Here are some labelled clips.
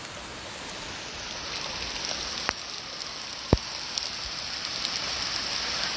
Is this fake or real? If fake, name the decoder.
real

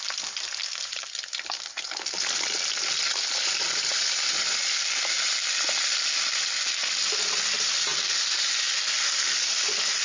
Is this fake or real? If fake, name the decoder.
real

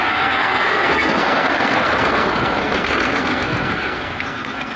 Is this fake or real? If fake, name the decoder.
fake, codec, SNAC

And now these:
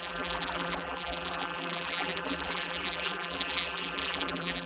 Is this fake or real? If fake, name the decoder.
fake, vocoder, BigVGAN v2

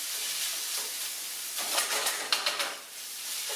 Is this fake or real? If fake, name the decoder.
real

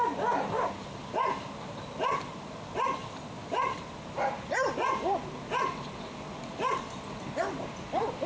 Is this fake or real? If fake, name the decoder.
real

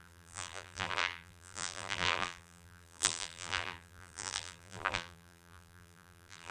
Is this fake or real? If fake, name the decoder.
fake, vocoder, BigVGAN v2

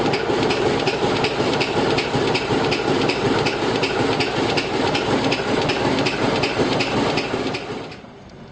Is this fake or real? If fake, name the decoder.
fake, vocoder, BigVGAN v2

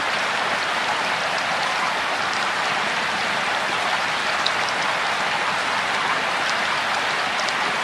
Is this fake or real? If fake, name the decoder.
real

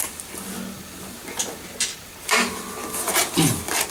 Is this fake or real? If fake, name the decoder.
real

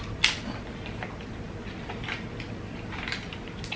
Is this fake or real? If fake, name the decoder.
real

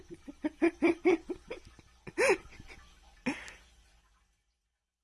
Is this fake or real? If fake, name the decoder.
real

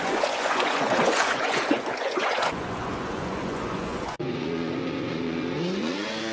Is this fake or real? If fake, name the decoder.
fake, vocoder, Vocos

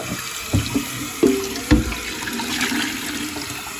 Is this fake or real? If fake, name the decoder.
real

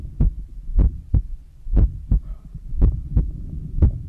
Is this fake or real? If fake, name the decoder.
fake, vocoder, BigVGAN v2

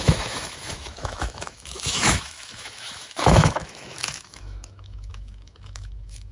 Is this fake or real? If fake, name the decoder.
fake, autoencoder, DAC-VAE